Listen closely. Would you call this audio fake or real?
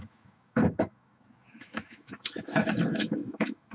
fake